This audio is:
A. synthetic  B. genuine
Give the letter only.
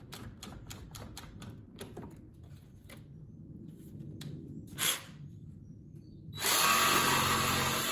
A